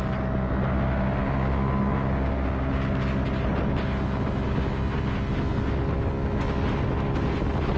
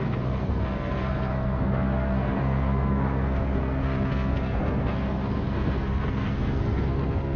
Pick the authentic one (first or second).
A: first